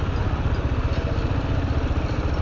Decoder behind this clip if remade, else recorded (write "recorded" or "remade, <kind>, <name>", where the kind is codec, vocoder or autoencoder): recorded